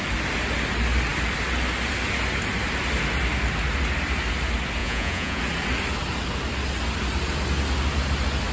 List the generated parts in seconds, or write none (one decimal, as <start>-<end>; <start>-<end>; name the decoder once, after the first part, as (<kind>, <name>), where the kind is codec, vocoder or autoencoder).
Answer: 4.8-5.4 (vocoder, Vocos)